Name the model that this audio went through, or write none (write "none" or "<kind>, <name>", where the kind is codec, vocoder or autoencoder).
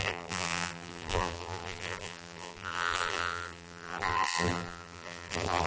vocoder, BigVGAN v2